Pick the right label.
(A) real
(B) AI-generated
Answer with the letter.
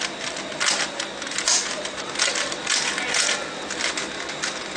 A